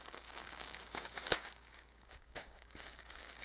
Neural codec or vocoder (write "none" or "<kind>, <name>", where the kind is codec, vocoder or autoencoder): codec, DAC